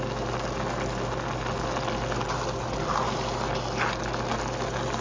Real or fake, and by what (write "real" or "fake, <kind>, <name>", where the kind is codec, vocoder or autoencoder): real